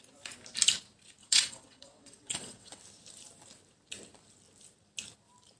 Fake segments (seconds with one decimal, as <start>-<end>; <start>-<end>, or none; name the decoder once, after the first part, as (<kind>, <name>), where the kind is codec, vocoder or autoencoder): 1.2-2.8 (vocoder, WaveNeXt)